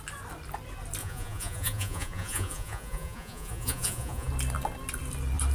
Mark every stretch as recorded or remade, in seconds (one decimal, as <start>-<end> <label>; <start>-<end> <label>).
0.0-1.0 recorded; 1.0-4.3 remade; 4.3-5.5 recorded